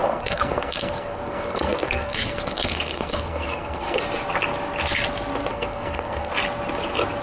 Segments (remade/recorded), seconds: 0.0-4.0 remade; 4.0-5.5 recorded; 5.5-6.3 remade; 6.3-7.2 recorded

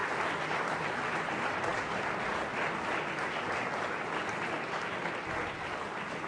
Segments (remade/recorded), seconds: 0.0-6.3 recorded

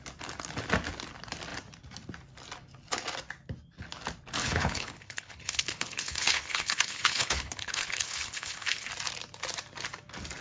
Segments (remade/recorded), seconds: 0.0-4.4 recorded; 4.4-8.9 remade; 8.9-10.4 recorded

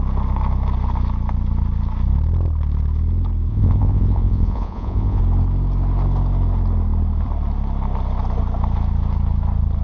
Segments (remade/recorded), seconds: 0.0-3.5 recorded; 3.5-5.2 remade; 5.2-9.8 recorded

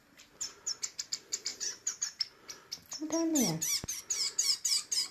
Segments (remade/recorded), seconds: 0.0-0.8 remade; 0.8-1.5 recorded; 1.5-2.2 remade; 2.2-5.1 recorded

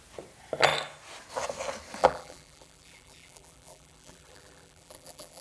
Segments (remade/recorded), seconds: 0.0-2.0 recorded; 2.0-5.4 remade